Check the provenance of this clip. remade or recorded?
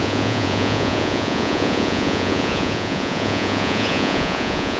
remade